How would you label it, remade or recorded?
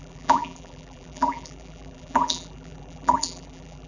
remade